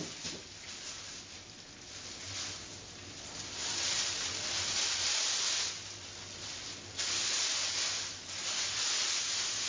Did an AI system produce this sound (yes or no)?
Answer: no